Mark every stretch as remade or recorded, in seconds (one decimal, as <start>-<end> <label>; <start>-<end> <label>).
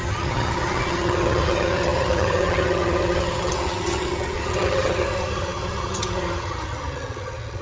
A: 0.0-7.6 remade